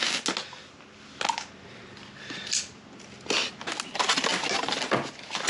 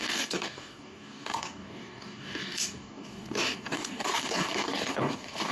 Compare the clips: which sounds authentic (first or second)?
first